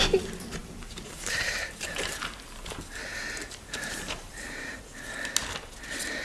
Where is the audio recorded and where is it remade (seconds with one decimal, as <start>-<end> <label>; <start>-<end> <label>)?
0.0-0.6 recorded; 0.6-4.3 remade; 4.3-6.2 recorded